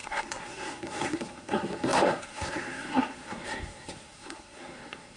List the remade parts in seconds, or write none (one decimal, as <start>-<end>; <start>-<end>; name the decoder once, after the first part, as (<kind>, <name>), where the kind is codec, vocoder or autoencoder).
0.0-5.2 (codec, SNAC)